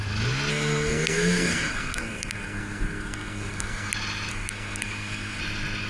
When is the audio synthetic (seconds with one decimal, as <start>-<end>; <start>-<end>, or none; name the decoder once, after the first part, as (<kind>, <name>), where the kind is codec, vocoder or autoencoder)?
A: 0.5-3.9 (codec, SNAC); 4.3-5.4

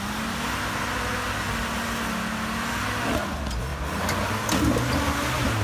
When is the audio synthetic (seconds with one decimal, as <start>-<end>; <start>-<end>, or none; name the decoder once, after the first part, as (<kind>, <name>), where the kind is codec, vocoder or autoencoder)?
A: none